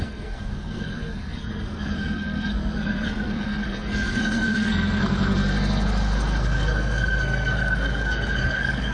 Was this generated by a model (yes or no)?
yes